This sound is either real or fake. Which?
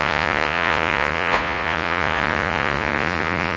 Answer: fake